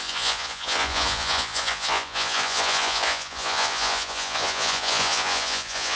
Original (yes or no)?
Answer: no